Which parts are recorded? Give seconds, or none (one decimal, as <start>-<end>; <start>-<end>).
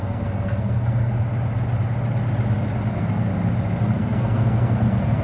1.2-2.9; 3.3-3.8